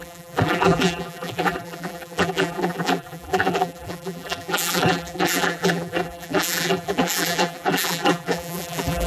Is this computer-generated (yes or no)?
yes